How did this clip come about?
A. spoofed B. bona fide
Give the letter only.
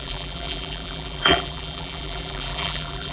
A